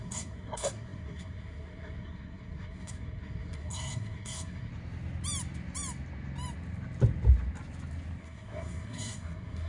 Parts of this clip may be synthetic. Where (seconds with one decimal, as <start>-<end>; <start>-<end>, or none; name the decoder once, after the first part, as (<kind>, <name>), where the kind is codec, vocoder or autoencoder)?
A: 0.0-4.7 (codec, SNAC); 8.2-9.7